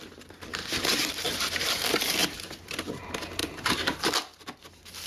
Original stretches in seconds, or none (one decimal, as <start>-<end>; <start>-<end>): 0.0-0.6; 1.1-2.2; 2.9-3.4; 4.0-5.1